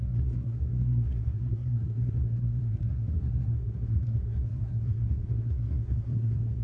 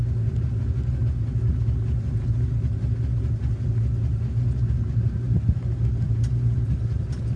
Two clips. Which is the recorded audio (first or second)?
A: second